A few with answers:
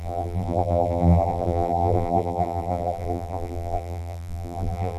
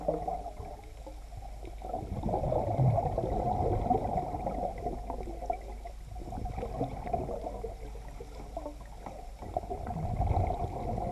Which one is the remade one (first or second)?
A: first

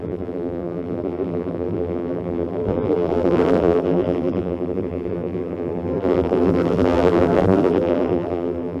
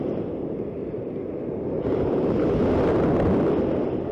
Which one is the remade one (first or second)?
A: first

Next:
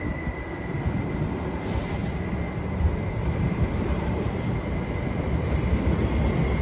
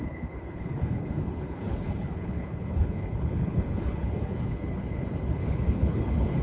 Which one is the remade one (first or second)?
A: second